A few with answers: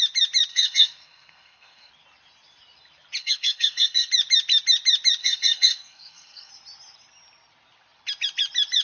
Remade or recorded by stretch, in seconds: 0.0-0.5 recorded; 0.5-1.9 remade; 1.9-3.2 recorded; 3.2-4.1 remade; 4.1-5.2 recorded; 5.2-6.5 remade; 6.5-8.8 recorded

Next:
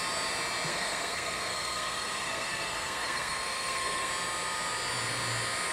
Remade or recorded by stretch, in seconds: 0.0-0.7 recorded; 0.7-4.1 remade; 4.1-5.7 recorded

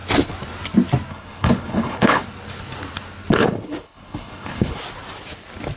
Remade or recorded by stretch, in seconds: 0.0-1.1 recorded; 1.1-2.2 remade; 2.2-3.4 recorded; 3.4-4.8 remade; 4.8-5.8 recorded

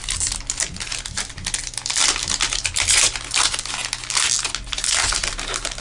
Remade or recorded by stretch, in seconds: 0.0-5.8 recorded

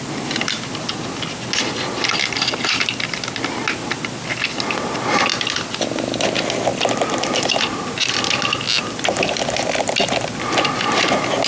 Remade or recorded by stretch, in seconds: 0.0-11.5 recorded

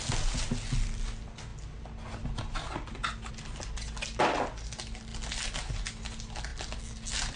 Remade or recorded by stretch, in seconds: 0.0-7.4 recorded

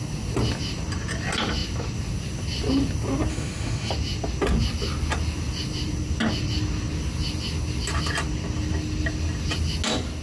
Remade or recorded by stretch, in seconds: 0.0-3.3 recorded; 3.3-3.9 remade; 3.9-10.2 recorded

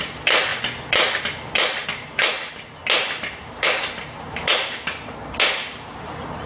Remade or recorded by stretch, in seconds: 0.0-0.5 remade; 0.5-1.2 recorded; 1.2-2.3 remade; 2.3-3.4 recorded; 3.4-4.5 remade; 4.5-5.6 recorded; 5.6-6.5 remade